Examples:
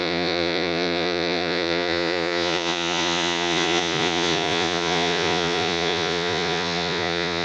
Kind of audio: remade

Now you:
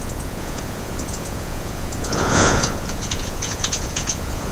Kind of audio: remade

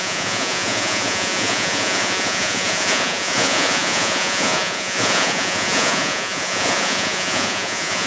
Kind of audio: remade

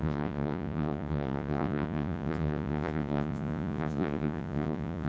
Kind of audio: remade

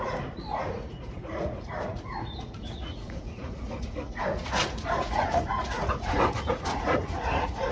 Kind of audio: remade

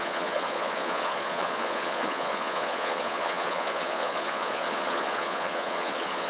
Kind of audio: remade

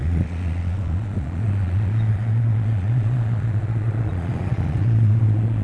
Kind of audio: remade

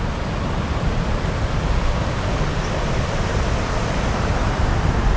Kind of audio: recorded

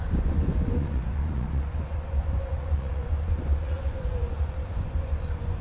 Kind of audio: remade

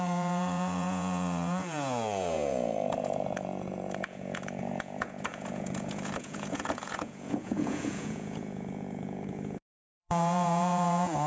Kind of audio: remade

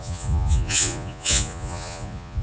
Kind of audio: remade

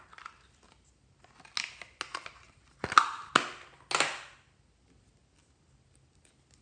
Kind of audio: recorded